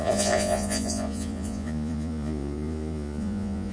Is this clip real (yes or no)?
no